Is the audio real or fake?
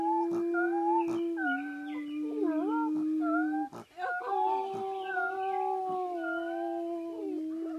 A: real